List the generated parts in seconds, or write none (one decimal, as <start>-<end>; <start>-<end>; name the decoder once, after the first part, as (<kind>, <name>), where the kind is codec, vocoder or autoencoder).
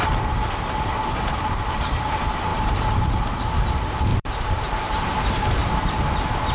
2.5-3.5 (vocoder, BigVGAN v2); 4.1-6.1